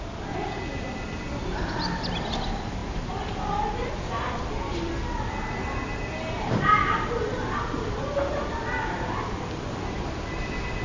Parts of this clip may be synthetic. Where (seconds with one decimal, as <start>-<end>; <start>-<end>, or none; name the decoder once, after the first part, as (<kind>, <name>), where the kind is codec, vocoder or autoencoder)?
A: none

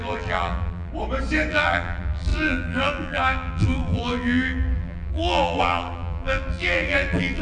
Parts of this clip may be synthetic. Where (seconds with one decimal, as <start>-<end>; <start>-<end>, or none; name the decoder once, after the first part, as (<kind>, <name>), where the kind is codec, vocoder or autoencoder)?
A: 0.0-0.9 (vocoder, BigVGAN v2); 1.5-7.4

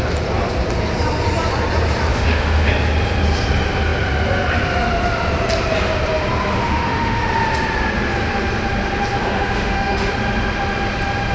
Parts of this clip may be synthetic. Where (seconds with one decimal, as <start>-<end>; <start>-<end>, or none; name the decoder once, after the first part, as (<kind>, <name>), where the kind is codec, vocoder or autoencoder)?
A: 2.1-2.7 (autoencoder, DAC-VAE); 6.5-7.3; 9.2-10.1

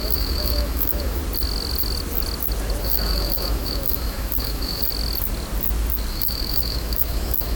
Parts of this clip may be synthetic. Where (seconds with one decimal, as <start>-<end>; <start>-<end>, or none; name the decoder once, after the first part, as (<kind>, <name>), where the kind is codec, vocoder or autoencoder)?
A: 0.0-1.2 (autoencoder, DAC-VAE); 2.8-4.8; 6.1-7.5